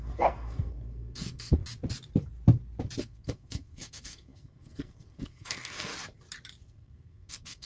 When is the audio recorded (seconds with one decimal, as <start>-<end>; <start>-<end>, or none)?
1.6-3.0; 5.9-6.6